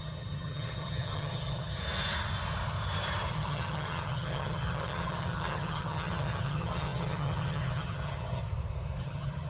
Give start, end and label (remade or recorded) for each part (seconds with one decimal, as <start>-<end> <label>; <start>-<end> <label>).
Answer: 0.0-1.8 remade; 1.8-3.3 recorded; 3.3-8.4 remade; 8.4-9.0 recorded; 9.0-9.5 remade